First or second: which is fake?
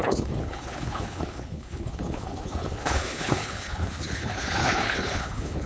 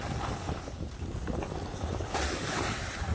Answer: first